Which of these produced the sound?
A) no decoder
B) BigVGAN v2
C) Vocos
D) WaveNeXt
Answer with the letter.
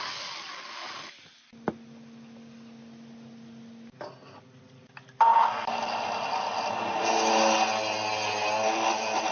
A